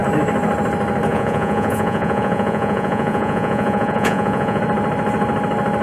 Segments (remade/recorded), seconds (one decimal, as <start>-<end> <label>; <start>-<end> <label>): 0.0-1.1 recorded; 1.1-4.6 remade; 4.6-5.8 recorded